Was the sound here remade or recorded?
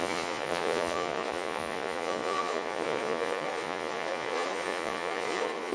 remade